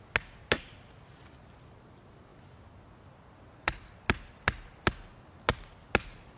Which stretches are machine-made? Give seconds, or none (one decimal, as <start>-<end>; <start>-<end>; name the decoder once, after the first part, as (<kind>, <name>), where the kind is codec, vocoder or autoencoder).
none